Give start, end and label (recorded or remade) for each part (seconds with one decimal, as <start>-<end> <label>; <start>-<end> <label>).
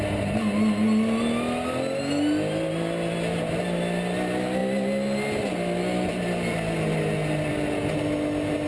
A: 0.0-8.7 recorded